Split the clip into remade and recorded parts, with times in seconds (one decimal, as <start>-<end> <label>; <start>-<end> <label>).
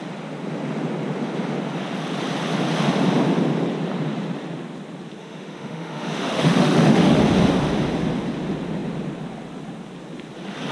0.0-5.2 recorded; 5.2-7.2 remade; 7.2-10.7 recorded